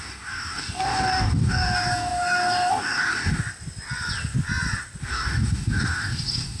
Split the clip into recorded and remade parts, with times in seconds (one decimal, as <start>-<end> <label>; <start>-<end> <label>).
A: 0.0-3.4 remade; 3.4-5.0 recorded; 5.0-6.6 remade